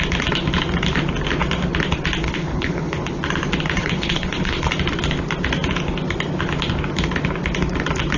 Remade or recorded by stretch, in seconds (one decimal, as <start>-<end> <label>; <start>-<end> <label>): 0.0-2.2 recorded; 2.2-3.2 remade; 3.2-3.8 recorded; 3.8-4.7 remade; 4.7-8.2 recorded